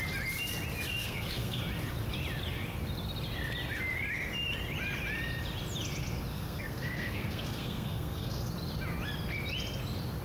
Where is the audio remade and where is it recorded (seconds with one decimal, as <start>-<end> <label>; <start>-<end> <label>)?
0.0-1.0 recorded; 1.0-1.6 remade; 1.6-6.3 recorded; 6.3-8.5 remade; 8.5-10.2 recorded